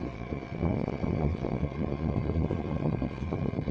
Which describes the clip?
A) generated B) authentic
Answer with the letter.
A